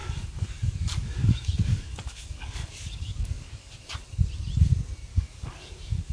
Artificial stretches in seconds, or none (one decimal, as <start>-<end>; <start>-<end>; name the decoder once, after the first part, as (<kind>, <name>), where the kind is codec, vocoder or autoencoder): 0.0-3.7 (codec, DAC); 5.1-6.1